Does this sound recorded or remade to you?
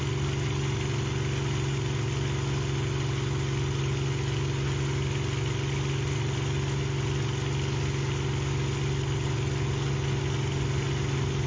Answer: recorded